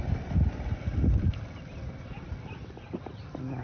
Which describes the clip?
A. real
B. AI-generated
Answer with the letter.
A